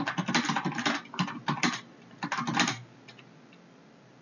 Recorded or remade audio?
recorded